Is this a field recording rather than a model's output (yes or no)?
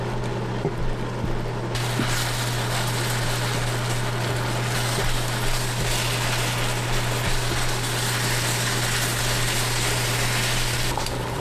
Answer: yes